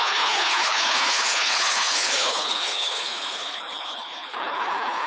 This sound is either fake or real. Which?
fake